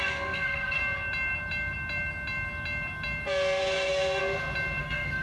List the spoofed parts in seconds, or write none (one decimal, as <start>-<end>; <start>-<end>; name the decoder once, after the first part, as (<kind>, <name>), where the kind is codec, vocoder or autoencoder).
0.0-0.8 (codec, SNAC); 3.6-4.2; 4.8-5.2

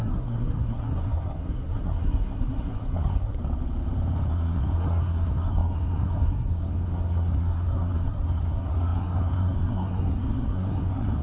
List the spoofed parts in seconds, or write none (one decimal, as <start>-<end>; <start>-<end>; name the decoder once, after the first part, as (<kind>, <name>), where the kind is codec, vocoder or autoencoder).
0.0-3.4 (codec, SNAC); 4.3-11.2

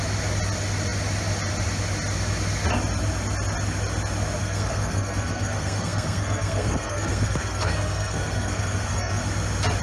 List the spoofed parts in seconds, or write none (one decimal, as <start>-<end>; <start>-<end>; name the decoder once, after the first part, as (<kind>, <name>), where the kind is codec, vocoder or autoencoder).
4.4-9.2 (codec, SNAC)